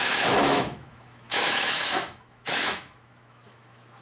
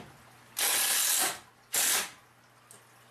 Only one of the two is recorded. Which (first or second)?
second